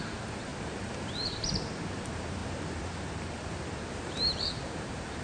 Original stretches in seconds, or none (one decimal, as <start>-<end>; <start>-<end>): none